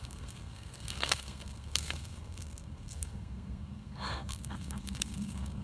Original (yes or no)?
no